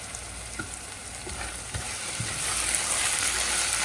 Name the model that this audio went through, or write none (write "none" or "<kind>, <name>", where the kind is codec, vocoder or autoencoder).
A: none